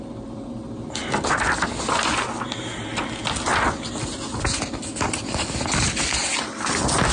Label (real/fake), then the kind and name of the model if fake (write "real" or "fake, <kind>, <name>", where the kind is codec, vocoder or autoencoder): real